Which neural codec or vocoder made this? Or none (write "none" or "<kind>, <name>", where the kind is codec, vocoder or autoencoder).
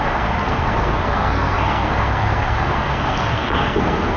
codec, SNAC